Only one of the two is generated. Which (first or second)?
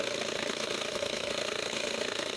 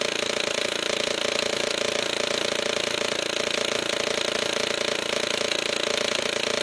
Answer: first